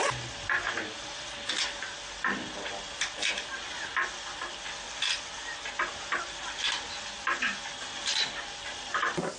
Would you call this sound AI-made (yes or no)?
no